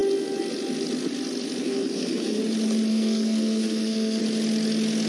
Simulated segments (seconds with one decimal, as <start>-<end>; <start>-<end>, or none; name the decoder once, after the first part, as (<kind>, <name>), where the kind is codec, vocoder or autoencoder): 1.6-2.4 (codec, SNAC); 2.9-4.2